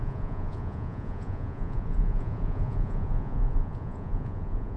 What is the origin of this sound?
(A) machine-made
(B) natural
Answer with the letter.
A